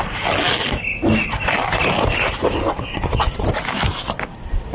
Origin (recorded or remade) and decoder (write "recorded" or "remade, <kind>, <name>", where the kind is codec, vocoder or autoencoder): recorded